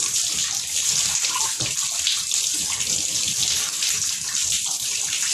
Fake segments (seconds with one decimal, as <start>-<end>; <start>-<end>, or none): none